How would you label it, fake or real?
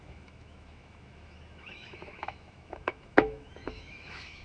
fake